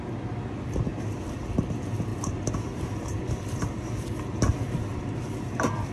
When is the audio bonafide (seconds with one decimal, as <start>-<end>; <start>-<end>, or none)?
0.0-0.9; 1.5-2.1